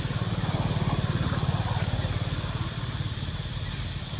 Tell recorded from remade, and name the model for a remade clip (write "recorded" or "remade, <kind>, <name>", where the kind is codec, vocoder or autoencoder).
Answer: recorded